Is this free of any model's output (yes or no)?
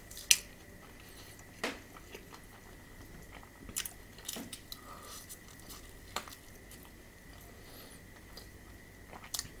yes